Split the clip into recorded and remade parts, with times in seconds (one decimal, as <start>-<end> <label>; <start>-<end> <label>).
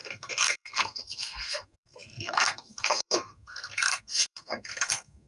0.0-5.3 remade